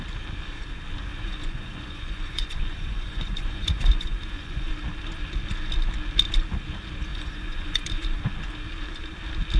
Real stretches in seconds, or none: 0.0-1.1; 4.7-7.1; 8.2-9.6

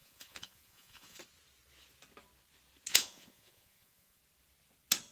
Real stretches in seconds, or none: 1.2-2.9; 4.2-5.1

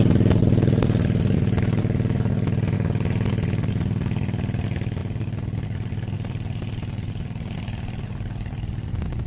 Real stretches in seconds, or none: 0.0-9.3

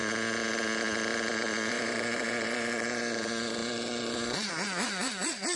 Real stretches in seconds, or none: 0.0-1.7

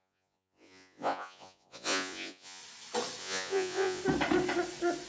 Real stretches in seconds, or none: 2.6-3.2; 4.0-5.1

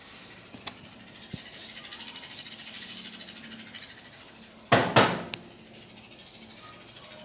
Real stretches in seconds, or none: 0.0-7.2